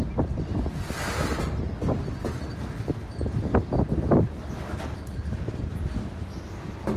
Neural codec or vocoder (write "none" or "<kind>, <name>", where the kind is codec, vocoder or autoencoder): none